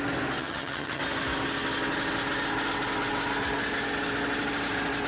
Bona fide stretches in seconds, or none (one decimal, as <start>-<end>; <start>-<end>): 0.0-0.4; 1.0-5.1